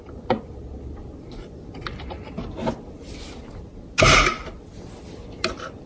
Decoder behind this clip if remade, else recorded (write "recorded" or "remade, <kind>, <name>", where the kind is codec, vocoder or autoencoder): recorded